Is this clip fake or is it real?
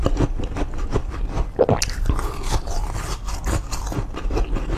real